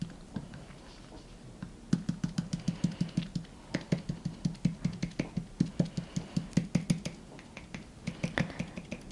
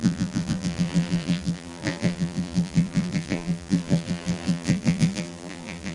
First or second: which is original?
first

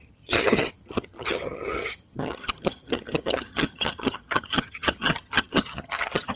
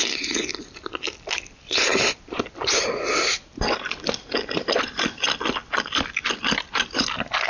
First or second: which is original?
second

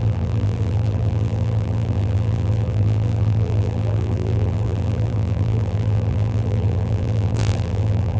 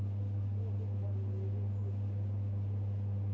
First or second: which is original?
second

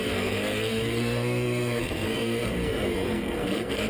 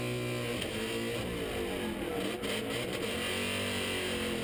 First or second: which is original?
second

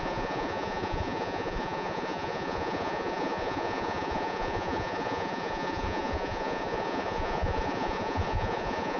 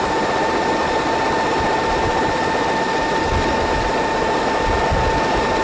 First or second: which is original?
second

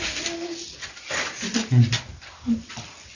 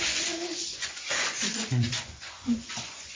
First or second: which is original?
first